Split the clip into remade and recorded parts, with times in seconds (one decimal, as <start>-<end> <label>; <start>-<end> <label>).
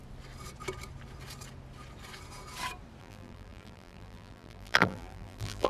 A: 0.0-3.0 recorded; 3.0-5.7 remade